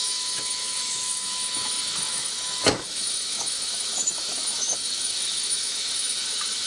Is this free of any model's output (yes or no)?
no